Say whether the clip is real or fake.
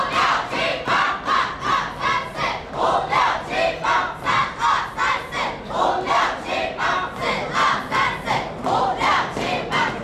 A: real